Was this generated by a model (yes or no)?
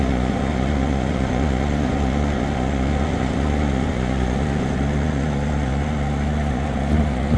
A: yes